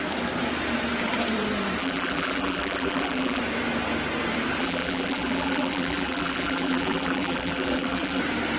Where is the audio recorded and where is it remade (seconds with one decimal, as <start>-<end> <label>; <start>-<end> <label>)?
0.0-1.8 recorded; 1.8-3.4 remade; 3.4-4.6 recorded; 4.6-8.2 remade; 8.2-8.6 recorded